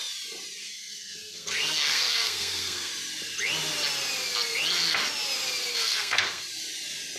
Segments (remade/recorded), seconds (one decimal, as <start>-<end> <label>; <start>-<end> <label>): 0.0-0.6 recorded; 0.6-2.9 remade; 2.9-5.7 recorded; 5.7-6.4 remade; 6.4-7.2 recorded